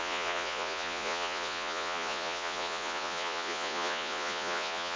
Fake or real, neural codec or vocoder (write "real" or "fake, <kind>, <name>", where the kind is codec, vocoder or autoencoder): fake, vocoder, Vocos